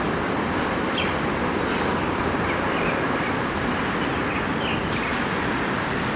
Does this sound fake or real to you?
real